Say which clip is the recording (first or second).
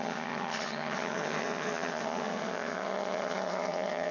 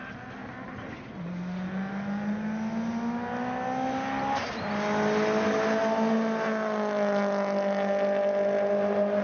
second